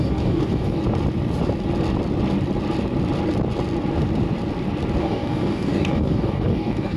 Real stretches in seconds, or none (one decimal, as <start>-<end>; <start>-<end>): 0.8-5.0